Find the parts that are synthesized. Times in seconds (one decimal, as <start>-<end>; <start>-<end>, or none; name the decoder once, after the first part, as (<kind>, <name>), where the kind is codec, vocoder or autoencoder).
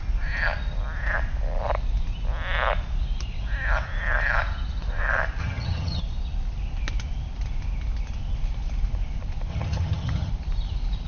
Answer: 5.4-6.0 (vocoder, HiFi-GAN); 9.5-10.3